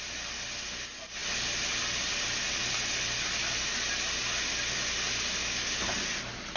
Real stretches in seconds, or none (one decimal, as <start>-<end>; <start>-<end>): 0.0-6.6